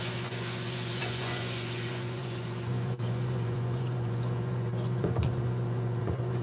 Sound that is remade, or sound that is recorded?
remade